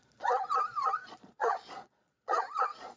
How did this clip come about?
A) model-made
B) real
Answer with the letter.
A